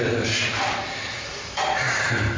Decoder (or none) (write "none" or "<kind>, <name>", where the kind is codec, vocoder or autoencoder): vocoder, BigVGAN v2